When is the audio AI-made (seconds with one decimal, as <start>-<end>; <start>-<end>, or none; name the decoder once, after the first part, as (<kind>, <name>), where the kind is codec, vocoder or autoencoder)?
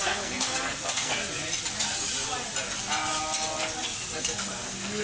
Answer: 0.0-1.2 (codec, SNAC); 4.2-5.0